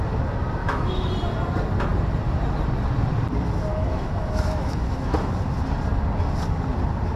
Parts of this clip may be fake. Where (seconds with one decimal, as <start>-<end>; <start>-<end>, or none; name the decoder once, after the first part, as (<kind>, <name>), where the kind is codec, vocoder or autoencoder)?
0.6-1.1 (autoencoder, DAC-VAE); 3.7-5.3